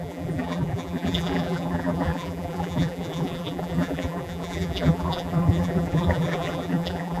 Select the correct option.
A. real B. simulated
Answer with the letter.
B